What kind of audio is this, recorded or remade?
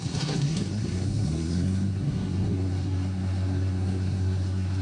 remade